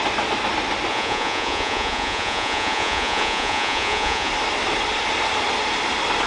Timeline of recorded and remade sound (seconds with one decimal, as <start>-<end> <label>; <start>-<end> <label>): 0.0-0.9 recorded; 0.9-4.3 remade; 4.3-6.3 recorded

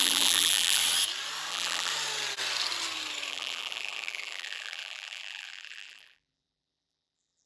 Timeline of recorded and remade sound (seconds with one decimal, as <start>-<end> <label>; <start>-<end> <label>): 0.0-0.8 remade; 0.8-1.5 recorded; 1.5-1.9 remade; 1.9-3.3 recorded; 3.3-7.5 remade